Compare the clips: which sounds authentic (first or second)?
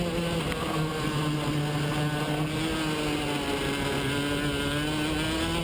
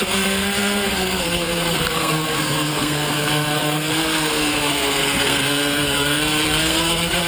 first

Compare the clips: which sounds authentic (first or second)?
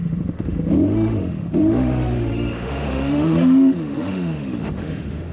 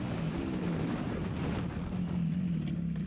second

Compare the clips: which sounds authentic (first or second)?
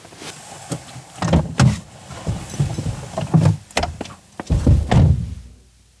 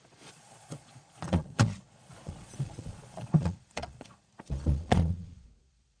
first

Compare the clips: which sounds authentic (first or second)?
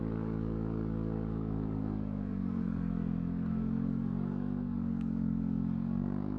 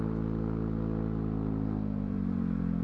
second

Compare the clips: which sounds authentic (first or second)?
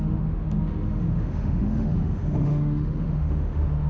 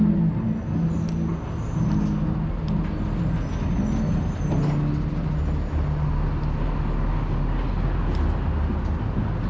second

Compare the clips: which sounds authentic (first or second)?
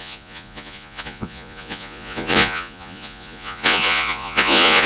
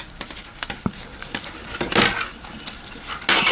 second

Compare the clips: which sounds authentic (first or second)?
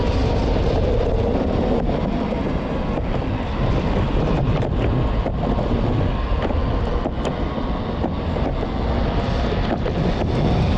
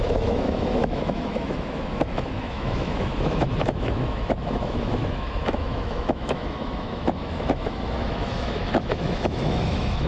first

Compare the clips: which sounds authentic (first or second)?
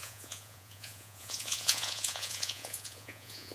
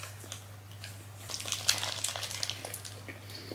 second